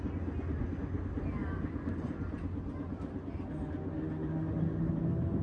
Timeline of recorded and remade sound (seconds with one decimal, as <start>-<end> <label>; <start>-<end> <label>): 0.0-5.4 recorded